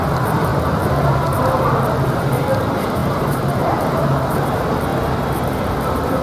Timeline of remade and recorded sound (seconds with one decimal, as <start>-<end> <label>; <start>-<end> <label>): 0.0-0.5 remade; 0.5-2.6 recorded; 2.6-4.9 remade; 4.9-5.7 recorded; 5.7-6.2 remade